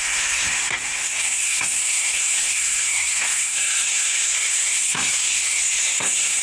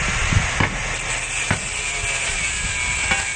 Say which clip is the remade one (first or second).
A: first